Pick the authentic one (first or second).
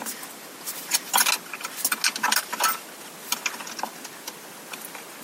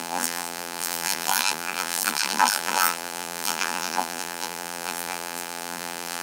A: first